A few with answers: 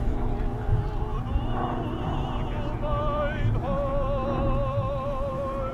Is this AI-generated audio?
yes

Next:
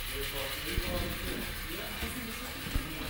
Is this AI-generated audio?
no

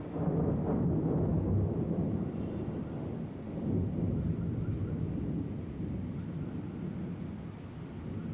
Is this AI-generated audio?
no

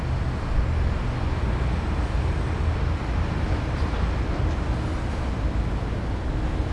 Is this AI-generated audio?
no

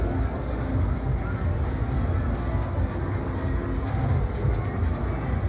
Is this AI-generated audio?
no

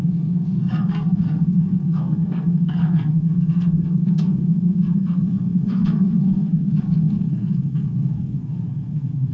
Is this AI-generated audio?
yes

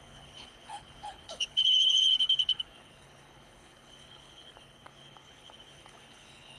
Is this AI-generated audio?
yes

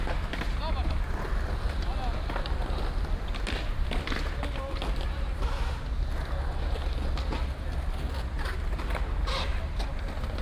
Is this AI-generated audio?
no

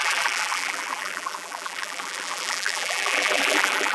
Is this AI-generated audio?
yes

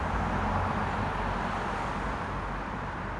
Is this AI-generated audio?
no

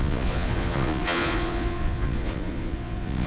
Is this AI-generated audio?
yes